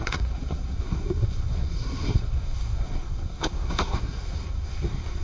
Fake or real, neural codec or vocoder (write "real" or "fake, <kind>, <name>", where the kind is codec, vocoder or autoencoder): fake, codec, SNAC